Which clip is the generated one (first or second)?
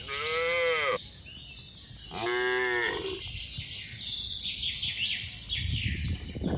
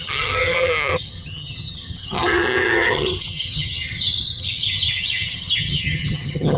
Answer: second